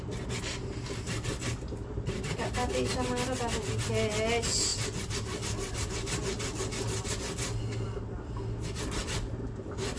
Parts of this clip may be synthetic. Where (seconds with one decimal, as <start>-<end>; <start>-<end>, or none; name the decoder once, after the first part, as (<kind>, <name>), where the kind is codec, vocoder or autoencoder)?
none